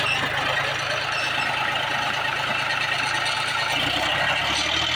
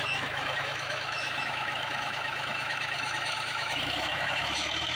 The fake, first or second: second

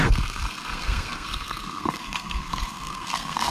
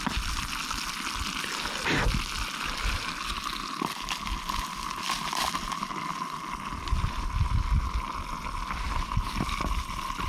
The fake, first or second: first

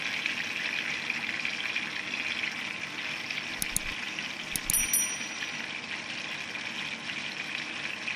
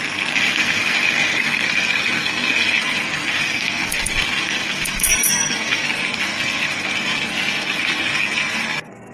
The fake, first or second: second